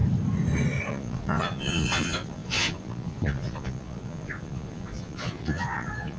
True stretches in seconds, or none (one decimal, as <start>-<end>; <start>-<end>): 0.0-0.9